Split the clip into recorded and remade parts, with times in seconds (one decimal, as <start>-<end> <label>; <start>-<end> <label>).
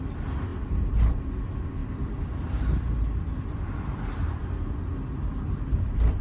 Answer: 0.0-1.8 recorded; 1.8-2.5 remade; 2.5-6.2 recorded